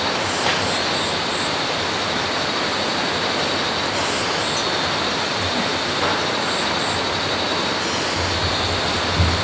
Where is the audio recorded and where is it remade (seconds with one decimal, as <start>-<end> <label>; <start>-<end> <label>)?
0.0-9.4 recorded